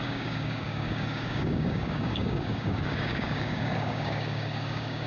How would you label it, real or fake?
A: fake